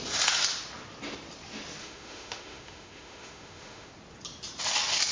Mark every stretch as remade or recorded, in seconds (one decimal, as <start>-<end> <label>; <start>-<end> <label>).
0.0-1.8 recorded; 1.8-3.9 remade; 3.9-5.1 recorded